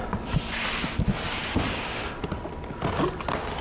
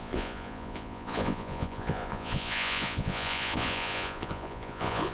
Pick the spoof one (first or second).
second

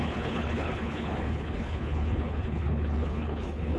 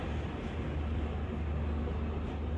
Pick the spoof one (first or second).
first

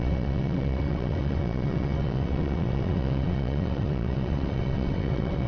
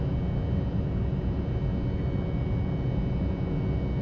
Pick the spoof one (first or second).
first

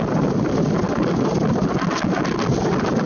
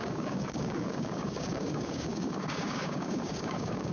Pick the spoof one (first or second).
second